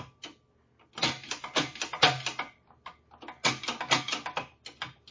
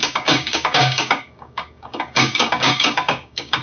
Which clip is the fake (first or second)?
second